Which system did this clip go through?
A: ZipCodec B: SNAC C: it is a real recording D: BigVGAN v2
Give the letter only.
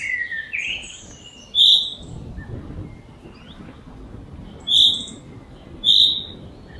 C